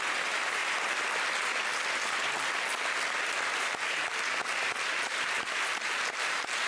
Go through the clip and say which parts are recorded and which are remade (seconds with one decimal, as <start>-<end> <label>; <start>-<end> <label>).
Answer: 0.0-0.6 remade; 0.6-4.6 recorded; 4.6-6.7 remade